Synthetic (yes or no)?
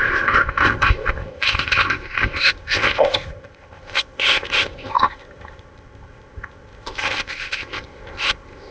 yes